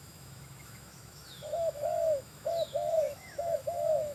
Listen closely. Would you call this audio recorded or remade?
remade